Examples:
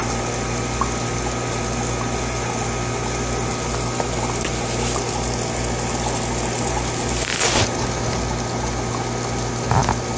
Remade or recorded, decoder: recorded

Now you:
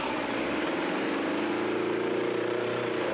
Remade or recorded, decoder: remade, vocoder, BigVGAN v2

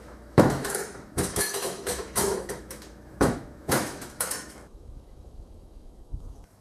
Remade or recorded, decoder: remade, autoencoder, DAC-VAE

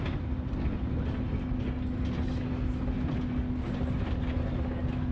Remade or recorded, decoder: recorded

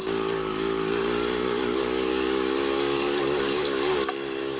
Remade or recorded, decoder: remade, codec, DAC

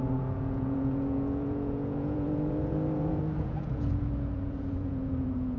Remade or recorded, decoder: remade, vocoder, Vocos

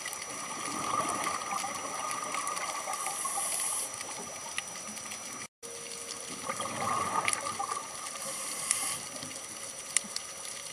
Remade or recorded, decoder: recorded